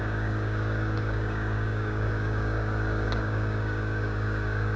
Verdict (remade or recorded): remade